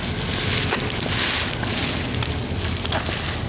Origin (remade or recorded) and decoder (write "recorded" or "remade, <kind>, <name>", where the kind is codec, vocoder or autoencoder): recorded